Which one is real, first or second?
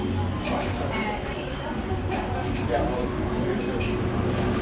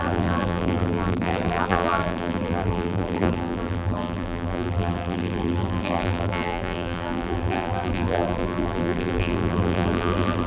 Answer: first